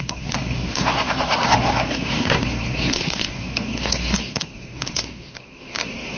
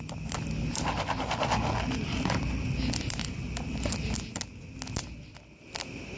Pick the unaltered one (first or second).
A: second